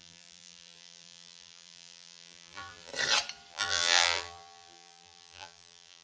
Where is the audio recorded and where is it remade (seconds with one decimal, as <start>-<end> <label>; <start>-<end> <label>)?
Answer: 0.0-2.9 remade; 2.9-3.5 recorded; 3.5-6.0 remade